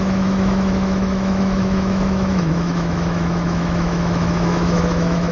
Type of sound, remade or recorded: remade